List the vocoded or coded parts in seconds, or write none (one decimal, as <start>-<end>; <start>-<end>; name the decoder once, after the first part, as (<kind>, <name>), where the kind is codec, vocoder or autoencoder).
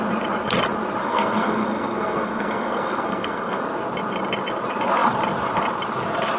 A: 1.0-3.6 (codec, SNAC)